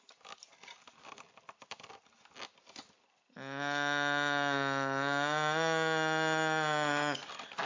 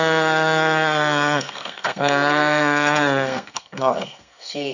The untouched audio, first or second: first